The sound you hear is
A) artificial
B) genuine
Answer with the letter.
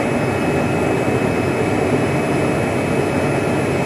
B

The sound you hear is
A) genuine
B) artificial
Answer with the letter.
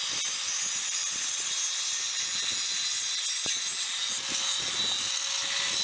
A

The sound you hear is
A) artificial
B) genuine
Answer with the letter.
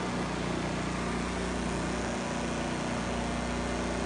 B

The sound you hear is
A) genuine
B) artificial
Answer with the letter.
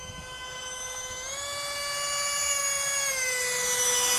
A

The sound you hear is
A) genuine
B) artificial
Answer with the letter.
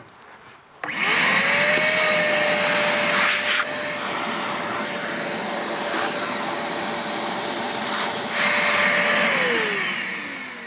A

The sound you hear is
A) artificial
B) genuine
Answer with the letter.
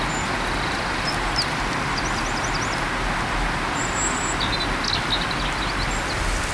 B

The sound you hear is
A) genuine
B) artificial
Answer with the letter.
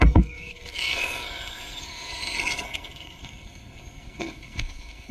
B